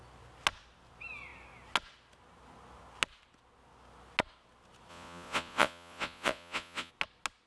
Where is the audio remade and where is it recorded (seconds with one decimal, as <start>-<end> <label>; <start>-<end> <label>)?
0.0-4.9 recorded; 4.9-6.9 remade; 6.9-7.5 recorded